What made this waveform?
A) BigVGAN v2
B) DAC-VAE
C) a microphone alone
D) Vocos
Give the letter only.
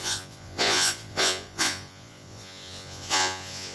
D